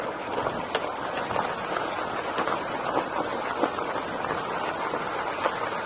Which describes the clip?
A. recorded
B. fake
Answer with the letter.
A